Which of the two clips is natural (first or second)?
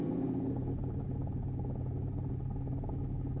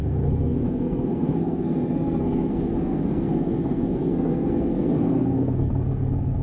first